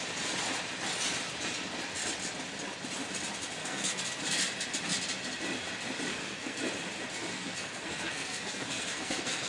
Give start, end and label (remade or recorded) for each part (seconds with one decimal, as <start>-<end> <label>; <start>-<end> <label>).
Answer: 0.0-3.6 recorded; 3.6-4.2 remade; 4.2-6.1 recorded; 6.1-6.6 remade; 6.6-7.3 recorded; 7.3-9.5 remade